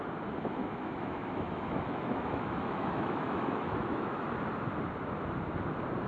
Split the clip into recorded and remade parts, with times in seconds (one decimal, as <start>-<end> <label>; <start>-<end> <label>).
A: 0.0-0.6 recorded; 0.6-4.3 remade; 4.3-6.1 recorded